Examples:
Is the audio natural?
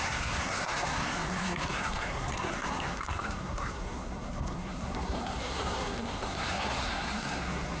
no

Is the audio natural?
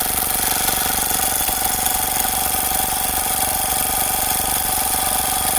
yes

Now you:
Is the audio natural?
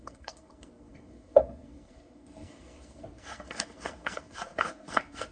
no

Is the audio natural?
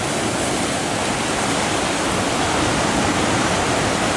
yes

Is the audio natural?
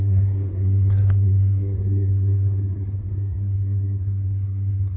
no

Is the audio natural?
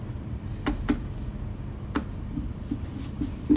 yes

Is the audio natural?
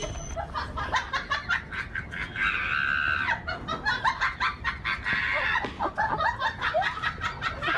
yes